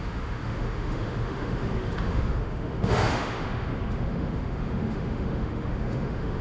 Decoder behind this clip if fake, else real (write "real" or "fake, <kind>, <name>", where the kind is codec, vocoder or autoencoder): fake, autoencoder, DAC-VAE